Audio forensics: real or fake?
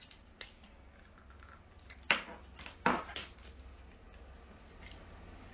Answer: real